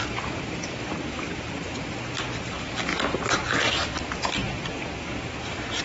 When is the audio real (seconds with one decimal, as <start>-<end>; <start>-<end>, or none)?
none